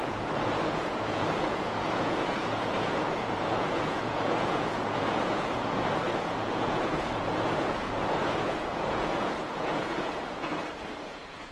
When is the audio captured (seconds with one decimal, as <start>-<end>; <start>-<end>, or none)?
10.5-11.0